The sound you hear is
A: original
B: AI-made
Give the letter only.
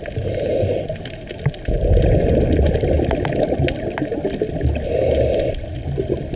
A